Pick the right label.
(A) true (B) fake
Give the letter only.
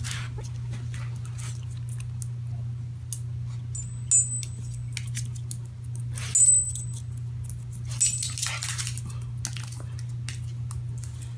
A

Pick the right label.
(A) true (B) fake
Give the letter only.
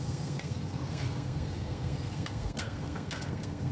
B